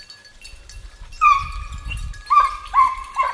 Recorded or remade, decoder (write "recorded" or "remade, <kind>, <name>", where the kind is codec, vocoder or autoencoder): recorded